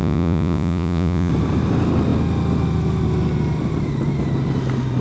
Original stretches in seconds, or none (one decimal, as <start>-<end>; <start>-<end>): 1.3-5.0